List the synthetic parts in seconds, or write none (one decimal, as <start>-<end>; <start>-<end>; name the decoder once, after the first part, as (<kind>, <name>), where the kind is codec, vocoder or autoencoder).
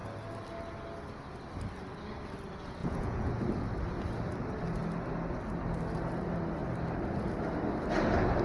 2.8-3.3 (vocoder, Vocos)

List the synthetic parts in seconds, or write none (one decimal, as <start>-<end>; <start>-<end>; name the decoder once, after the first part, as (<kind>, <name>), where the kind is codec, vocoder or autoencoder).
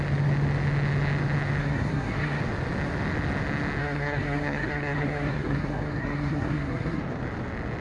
1.6-2.4 (codec, SNAC); 3.8-7.0